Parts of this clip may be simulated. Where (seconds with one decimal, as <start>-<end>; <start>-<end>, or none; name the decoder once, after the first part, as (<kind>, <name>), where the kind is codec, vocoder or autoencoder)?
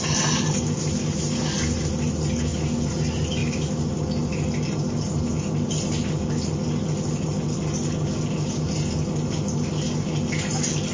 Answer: none